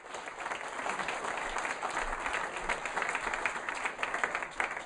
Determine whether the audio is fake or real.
real